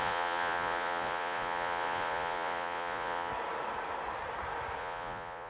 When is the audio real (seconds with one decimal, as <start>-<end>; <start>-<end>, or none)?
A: 3.3-4.8